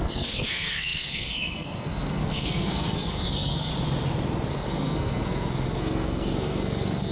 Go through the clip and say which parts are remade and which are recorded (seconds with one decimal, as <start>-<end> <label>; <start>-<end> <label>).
0.0-3.7 remade; 3.7-4.5 recorded; 4.5-7.1 remade